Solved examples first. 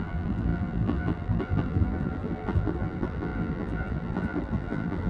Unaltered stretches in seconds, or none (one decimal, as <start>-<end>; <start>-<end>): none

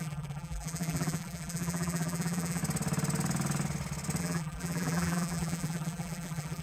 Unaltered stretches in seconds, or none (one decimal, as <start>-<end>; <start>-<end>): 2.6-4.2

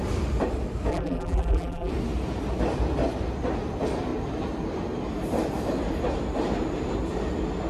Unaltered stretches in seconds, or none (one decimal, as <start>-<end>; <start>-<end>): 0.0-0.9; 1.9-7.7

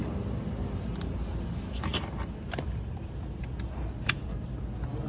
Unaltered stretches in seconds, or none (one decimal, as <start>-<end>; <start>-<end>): 0.0-5.1

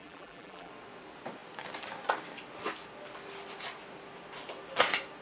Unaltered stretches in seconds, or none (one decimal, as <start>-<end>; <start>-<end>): 0.7-5.2